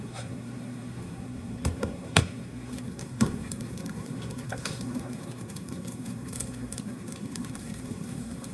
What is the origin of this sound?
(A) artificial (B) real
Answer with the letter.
A